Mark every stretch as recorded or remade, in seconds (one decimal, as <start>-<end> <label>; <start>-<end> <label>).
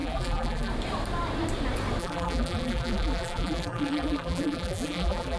0.0-0.7 remade; 0.7-2.0 recorded; 2.0-5.4 remade